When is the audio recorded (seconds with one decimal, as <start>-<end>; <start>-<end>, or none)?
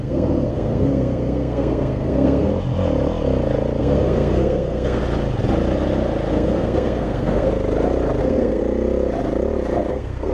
2.5-3.8; 5.0-6.3; 7.5-8.2; 8.6-9.9